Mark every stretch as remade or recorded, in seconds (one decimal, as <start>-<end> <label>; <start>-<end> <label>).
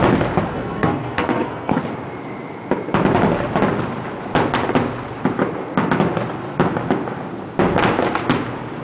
0.0-0.5 recorded; 0.5-1.8 remade; 1.8-8.8 recorded